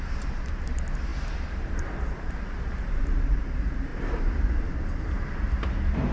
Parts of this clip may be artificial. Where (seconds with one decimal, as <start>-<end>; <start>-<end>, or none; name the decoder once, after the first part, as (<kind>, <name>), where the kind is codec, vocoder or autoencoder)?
0.0-6.1 (vocoder, BigVGAN v2)